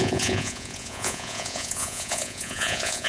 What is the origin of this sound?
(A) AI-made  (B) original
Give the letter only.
A